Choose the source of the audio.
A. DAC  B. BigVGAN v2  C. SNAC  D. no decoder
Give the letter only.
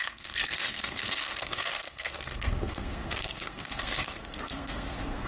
C